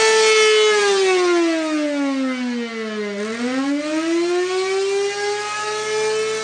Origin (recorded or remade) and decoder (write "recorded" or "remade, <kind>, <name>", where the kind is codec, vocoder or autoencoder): recorded